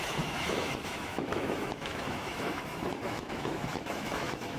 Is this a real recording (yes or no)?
no